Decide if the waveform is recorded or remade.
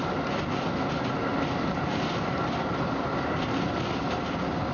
recorded